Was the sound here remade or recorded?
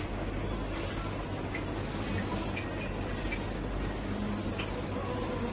recorded